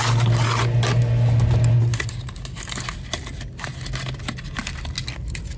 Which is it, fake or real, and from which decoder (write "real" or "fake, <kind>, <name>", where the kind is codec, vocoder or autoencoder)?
real